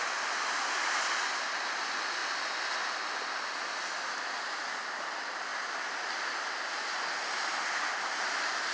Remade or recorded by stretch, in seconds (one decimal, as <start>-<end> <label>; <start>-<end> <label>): 0.0-8.7 recorded